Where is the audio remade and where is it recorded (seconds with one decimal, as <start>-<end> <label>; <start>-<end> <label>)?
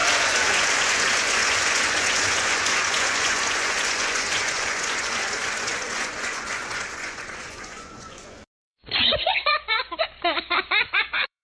0.0-11.4 remade